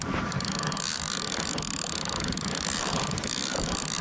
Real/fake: real